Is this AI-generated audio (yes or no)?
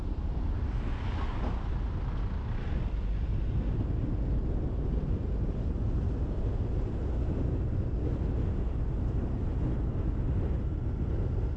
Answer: no